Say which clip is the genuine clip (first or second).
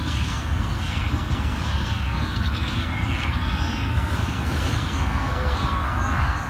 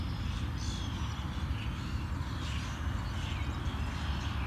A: second